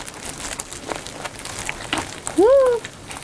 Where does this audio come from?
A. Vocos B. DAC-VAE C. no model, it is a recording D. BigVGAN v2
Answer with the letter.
C